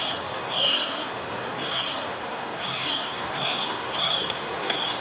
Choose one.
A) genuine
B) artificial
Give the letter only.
B